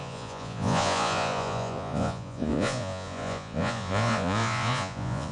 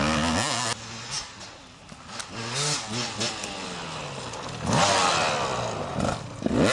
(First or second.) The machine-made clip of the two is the first